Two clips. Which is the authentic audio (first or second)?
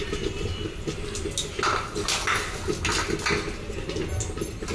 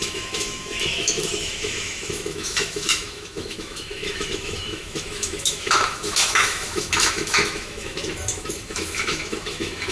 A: first